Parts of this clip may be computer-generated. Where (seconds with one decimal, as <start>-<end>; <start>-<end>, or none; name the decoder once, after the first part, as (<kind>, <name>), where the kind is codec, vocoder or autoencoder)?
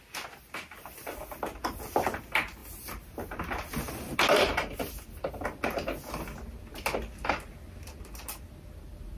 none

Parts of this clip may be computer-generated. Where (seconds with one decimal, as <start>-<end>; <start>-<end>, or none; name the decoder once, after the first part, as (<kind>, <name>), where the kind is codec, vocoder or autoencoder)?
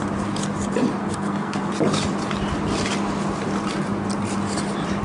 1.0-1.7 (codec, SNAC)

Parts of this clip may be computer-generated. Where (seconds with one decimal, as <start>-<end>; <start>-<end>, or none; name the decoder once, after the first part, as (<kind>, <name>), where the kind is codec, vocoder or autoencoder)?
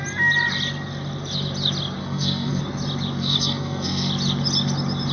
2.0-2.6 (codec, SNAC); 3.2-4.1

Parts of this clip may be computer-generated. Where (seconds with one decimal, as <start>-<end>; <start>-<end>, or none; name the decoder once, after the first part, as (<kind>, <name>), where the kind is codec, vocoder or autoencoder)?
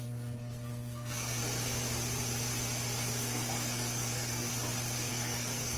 0.0-1.4 (codec, SNAC); 3.2-4.5; 5.1-5.8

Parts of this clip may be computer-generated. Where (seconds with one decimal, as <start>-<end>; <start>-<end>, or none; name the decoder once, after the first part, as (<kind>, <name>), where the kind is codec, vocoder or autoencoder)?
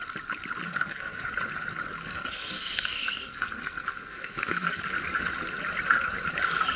0.6-1.2 (codec, SNAC); 2.0-4.8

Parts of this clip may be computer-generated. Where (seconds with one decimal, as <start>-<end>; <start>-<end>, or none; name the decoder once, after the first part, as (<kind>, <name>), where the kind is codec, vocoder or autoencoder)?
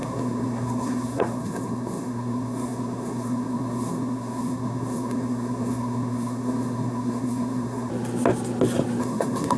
0.0-7.9 (codec, SNAC); 9.0-9.6